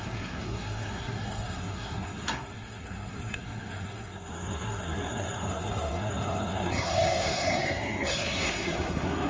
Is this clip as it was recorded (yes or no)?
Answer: no